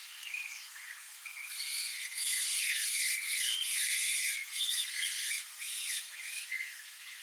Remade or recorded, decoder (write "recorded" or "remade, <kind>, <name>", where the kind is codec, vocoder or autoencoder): remade, codec, SNAC